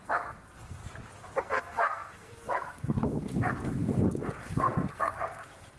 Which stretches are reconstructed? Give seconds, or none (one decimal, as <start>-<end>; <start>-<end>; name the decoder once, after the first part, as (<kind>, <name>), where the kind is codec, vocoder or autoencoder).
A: 0.0-0.8 (codec, SNAC); 1.4-5.8